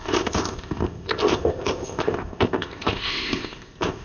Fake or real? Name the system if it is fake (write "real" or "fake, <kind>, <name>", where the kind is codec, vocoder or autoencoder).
fake, codec, ZipCodec